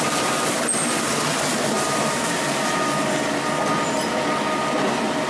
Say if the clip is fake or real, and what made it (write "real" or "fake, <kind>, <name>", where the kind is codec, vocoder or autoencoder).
real